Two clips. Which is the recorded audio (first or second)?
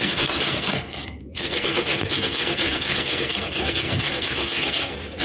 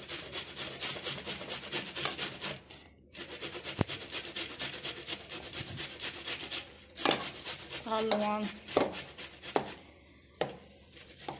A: second